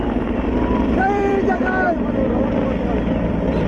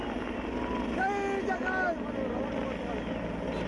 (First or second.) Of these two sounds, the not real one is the first